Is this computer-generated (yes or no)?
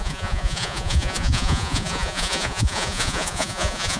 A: yes